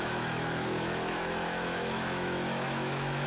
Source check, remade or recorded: remade